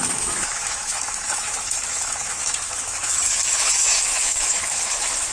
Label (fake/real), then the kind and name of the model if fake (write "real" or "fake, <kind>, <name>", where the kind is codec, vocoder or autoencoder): fake, autoencoder, DAC-VAE